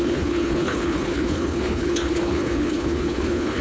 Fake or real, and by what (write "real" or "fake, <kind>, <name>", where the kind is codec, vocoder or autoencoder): fake, codec, HILCodec